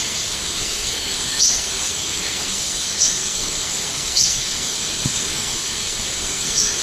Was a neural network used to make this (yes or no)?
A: yes